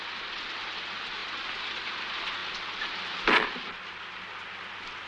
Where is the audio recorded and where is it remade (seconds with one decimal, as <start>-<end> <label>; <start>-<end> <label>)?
0.0-5.1 recorded